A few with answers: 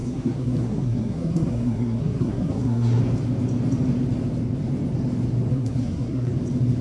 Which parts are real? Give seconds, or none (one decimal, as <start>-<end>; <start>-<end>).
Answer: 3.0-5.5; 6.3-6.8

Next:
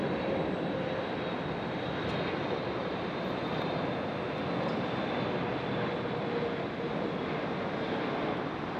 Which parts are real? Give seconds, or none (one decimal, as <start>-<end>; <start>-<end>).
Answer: 0.0-8.8

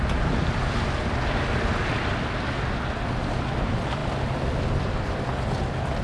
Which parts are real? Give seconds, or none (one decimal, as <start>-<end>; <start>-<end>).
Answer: 0.0-6.0

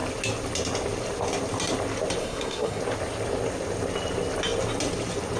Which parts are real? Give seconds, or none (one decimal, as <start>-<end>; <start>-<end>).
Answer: 0.0-2.2; 2.8-5.4

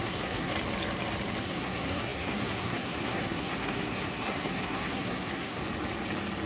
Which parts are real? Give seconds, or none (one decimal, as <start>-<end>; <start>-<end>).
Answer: 0.5-1.4; 5.6-6.5

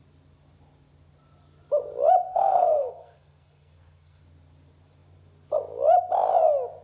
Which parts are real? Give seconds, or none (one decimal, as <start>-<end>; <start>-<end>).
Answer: 0.0-2.3; 4.2-6.8

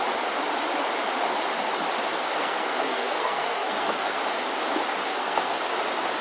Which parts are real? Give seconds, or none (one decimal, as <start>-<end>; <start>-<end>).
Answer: 0.0-2.1; 4.2-5.1; 5.6-6.2